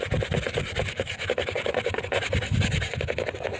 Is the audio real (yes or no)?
yes